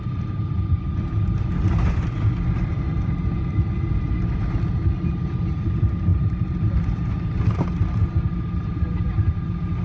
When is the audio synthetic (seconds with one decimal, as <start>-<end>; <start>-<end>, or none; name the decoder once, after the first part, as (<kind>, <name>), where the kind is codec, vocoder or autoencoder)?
6.1-7.1 (vocoder, BigVGAN v2)